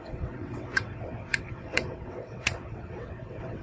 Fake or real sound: fake